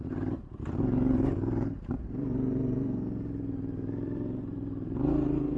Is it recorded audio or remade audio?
remade